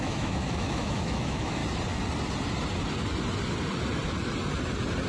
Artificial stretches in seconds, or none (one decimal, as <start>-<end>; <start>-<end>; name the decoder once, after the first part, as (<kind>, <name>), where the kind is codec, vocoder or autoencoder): 0.0-1.6 (autoencoder, DAC-VAE)